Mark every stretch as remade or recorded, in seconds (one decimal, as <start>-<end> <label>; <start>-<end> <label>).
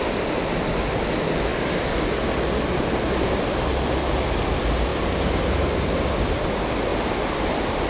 0.0-7.9 recorded